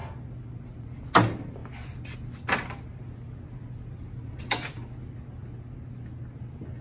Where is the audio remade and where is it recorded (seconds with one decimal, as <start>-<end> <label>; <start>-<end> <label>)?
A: 0.0-6.8 recorded